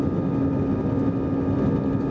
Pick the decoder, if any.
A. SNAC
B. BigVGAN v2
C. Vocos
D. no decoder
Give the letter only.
D